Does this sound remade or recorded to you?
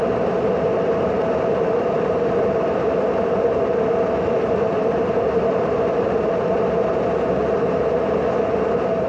recorded